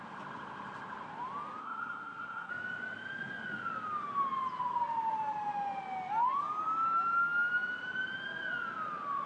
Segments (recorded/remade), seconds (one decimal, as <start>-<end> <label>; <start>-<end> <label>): 0.0-1.6 recorded; 1.6-2.5 remade; 2.5-9.3 recorded